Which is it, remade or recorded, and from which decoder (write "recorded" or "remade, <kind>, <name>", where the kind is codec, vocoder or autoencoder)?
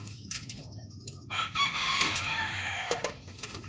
remade, autoencoder, DAC-VAE